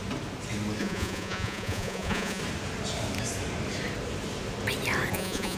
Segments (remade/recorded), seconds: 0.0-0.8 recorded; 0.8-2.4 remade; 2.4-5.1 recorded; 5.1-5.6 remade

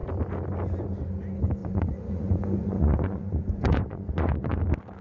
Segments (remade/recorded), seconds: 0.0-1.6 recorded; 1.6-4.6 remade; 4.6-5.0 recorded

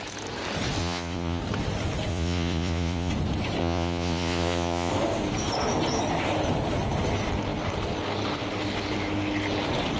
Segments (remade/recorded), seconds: 0.0-0.8 recorded; 0.8-1.4 remade; 1.4-2.1 recorded; 2.1-3.1 remade; 3.1-3.6 recorded; 3.6-4.9 remade; 4.9-10.0 recorded

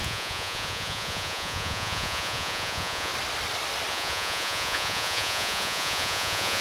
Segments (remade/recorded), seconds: 0.0-3.1 remade; 3.1-3.9 recorded; 3.9-6.6 remade

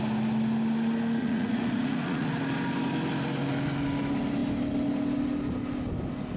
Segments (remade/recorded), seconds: 0.0-1.2 recorded; 1.2-2.3 remade; 2.3-6.4 recorded